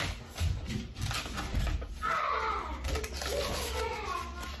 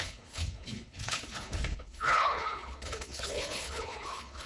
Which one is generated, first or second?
second